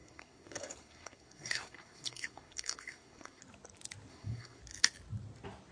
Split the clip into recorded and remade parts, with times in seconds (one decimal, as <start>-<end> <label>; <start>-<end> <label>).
0.0-3.4 remade; 3.4-4.1 recorded; 4.1-4.6 remade; 4.6-5.7 recorded